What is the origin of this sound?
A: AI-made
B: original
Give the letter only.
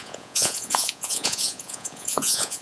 A